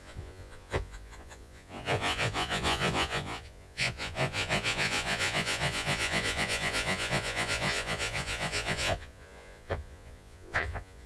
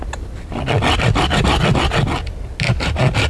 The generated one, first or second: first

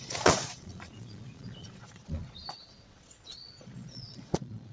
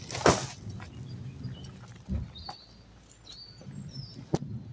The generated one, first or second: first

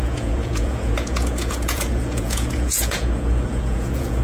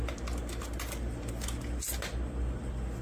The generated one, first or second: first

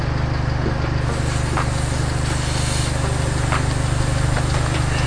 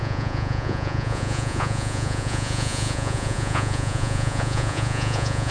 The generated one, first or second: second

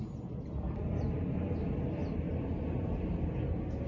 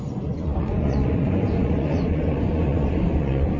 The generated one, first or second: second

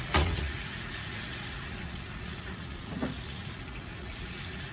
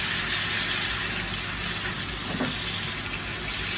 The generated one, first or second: first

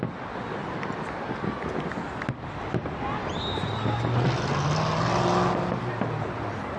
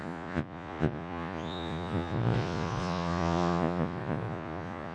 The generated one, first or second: second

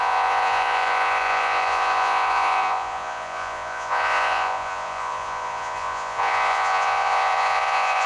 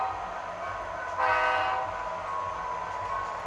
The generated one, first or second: first